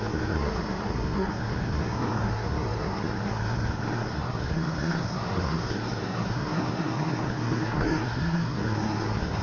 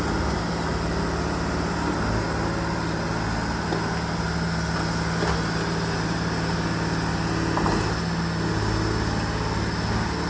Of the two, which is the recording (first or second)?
second